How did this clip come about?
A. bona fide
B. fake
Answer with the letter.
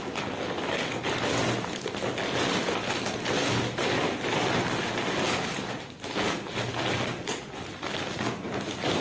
A